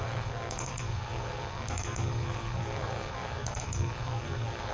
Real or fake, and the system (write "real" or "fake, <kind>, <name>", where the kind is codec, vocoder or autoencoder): fake, codec, SNAC